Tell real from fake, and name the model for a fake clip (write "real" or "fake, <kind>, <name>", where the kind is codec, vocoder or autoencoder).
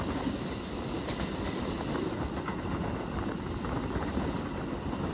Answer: real